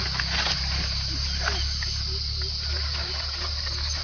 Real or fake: real